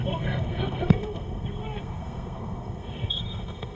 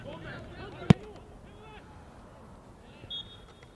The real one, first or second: second